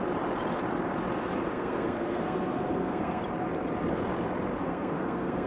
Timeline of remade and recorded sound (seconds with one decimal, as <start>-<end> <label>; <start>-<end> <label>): 0.0-1.5 recorded; 1.5-3.2 remade; 3.2-4.6 recorded; 4.6-5.5 remade